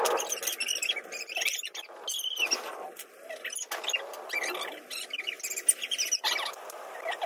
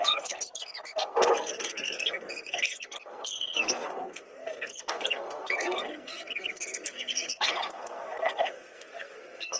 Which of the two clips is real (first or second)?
first